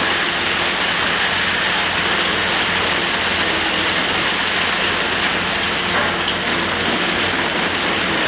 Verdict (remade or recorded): recorded